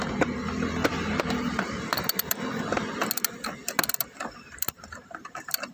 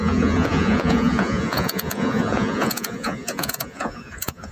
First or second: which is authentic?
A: first